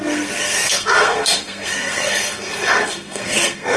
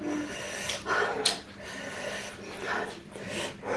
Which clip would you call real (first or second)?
second